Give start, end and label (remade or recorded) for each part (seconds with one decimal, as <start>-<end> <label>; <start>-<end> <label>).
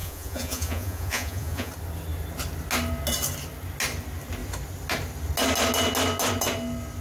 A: 0.0-1.7 remade; 1.7-7.0 recorded